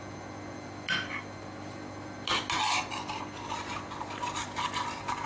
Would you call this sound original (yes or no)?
yes